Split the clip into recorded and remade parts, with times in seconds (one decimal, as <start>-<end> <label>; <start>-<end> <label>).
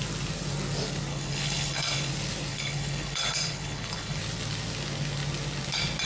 0.0-1.1 recorded; 1.1-2.1 remade; 2.1-2.5 recorded; 2.5-4.2 remade; 4.2-6.1 recorded